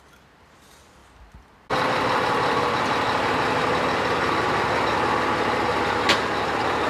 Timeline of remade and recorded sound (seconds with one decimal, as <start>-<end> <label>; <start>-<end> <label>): 0.0-6.9 recorded